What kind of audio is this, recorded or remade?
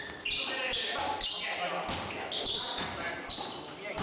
recorded